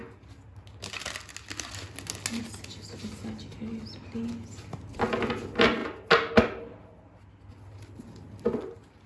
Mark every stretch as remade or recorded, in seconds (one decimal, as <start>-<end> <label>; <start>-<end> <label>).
0.0-9.1 recorded